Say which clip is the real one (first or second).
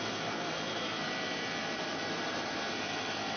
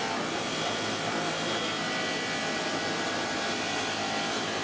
second